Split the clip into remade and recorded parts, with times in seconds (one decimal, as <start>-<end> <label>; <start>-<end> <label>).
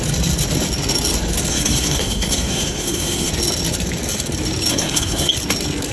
0.0-1.5 recorded; 1.5-3.3 remade; 3.3-4.7 recorded; 4.7-5.3 remade; 5.3-5.9 recorded